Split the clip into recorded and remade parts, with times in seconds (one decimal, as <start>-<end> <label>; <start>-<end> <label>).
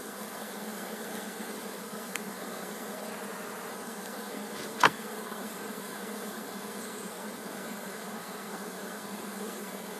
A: 0.0-3.1 remade; 3.1-3.7 recorded; 3.7-10.0 remade